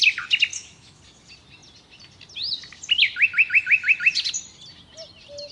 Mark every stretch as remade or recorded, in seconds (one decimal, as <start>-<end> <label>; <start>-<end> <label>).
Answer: 0.0-0.5 recorded; 0.5-1.0 remade; 1.0-5.5 recorded